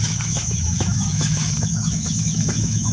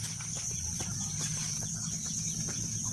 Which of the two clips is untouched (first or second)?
second